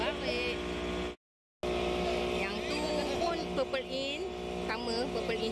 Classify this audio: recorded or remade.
recorded